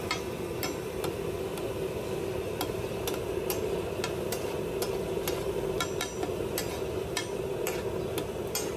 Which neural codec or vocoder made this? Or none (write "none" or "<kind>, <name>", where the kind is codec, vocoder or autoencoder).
none